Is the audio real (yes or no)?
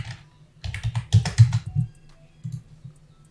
yes